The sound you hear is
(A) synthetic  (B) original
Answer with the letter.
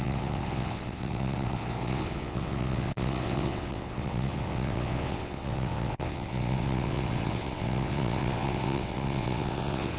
A